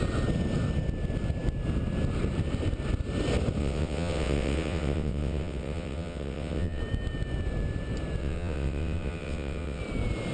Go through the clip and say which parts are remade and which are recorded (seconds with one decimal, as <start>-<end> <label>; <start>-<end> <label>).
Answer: 0.0-3.6 recorded; 3.6-6.8 remade; 6.8-8.2 recorded; 8.2-9.8 remade; 9.8-10.3 recorded